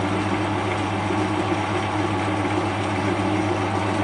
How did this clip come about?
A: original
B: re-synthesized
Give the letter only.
A